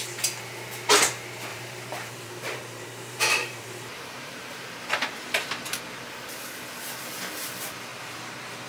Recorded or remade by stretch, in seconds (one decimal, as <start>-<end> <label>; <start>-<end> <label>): 0.0-1.5 recorded; 1.5-5.8 remade; 5.8-7.9 recorded; 7.9-8.7 remade